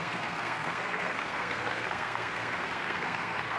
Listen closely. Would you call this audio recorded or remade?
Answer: remade